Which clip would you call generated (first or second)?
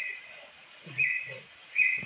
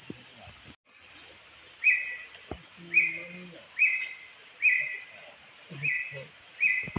first